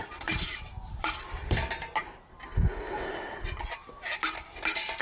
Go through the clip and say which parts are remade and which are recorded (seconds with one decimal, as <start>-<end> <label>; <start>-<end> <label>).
0.0-5.0 recorded